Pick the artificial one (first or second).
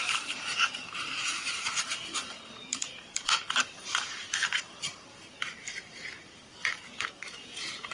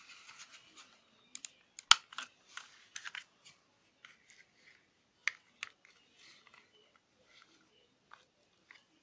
first